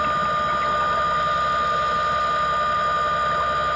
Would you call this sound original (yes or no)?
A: yes